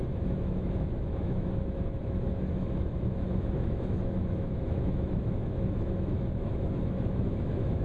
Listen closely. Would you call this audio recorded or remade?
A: remade